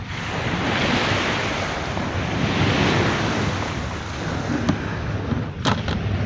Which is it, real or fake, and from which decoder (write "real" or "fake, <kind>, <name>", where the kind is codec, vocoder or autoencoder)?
real